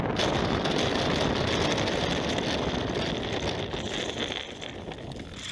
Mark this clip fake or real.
real